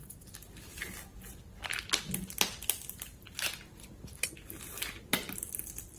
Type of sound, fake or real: real